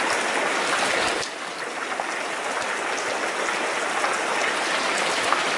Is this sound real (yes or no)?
yes